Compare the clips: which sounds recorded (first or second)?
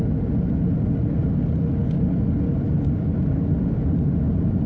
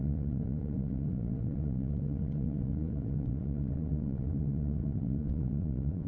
first